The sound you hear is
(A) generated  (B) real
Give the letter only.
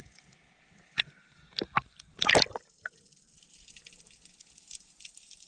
B